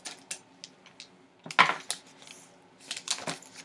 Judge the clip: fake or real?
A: real